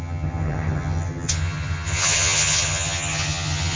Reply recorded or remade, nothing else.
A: remade